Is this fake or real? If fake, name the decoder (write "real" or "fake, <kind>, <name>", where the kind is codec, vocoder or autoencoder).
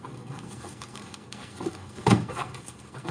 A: fake, codec, SNAC